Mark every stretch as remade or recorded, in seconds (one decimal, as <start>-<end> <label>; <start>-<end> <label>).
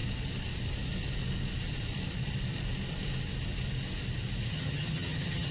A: 0.0-4.5 recorded; 4.5-5.5 remade